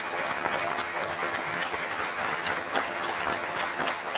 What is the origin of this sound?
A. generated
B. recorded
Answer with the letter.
A